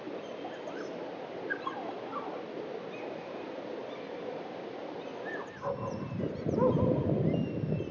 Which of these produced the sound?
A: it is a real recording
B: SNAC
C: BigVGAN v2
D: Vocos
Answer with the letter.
C